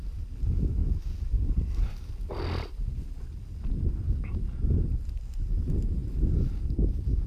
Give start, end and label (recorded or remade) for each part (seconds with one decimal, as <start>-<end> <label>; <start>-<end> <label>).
0.0-7.3 recorded